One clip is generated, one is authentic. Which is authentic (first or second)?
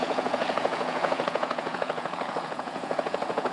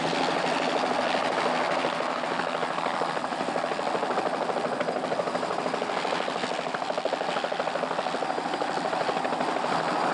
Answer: second